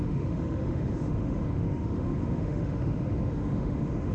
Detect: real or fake fake